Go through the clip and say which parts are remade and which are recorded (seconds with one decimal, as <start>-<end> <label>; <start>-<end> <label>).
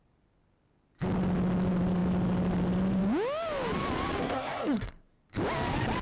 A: 0.0-4.2 recorded; 4.2-5.2 remade; 5.2-6.0 recorded